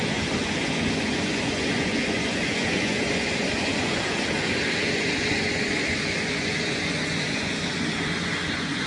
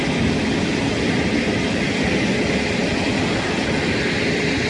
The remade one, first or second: first